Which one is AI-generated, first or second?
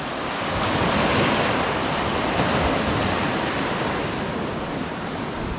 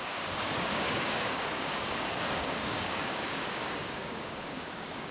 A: second